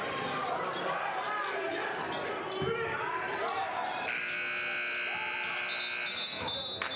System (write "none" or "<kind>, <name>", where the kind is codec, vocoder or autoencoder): none